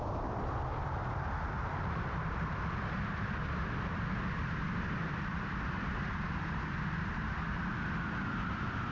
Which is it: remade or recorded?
remade